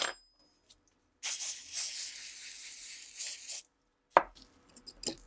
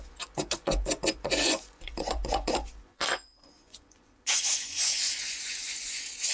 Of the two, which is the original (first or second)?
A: first